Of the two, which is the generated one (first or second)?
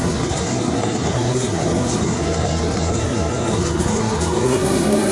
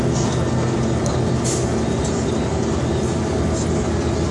first